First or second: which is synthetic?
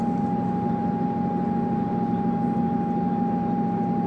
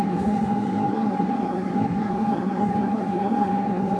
second